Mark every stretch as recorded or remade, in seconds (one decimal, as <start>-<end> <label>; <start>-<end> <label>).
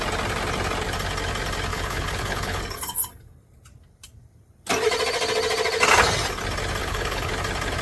0.0-1.7 recorded; 1.7-2.6 remade; 2.6-6.8 recorded; 6.8-7.3 remade; 7.3-7.8 recorded